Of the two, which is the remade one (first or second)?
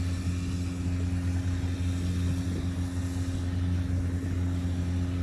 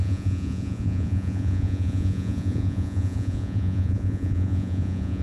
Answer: second